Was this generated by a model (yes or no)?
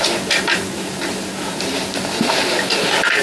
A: no